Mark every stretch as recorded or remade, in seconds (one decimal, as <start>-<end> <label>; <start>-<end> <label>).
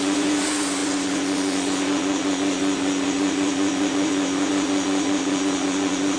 0.0-6.2 remade